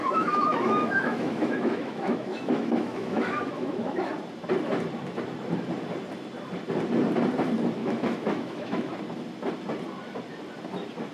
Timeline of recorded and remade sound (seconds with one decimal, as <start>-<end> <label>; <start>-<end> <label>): 0.0-4.1 remade; 4.1-7.8 recorded; 7.8-8.9 remade; 8.9-11.1 recorded